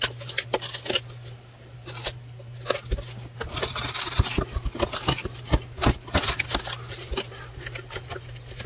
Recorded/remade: recorded